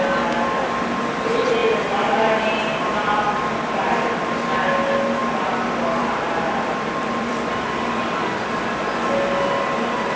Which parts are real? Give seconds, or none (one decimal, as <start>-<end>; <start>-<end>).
0.0-1.6; 4.2-5.2; 8.6-10.2